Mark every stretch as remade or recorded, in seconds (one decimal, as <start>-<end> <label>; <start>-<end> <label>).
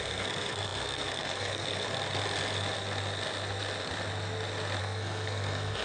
0.0-1.9 remade; 1.9-4.8 recorded; 4.8-5.8 remade